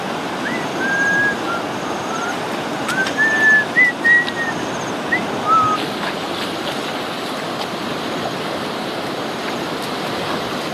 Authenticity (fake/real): real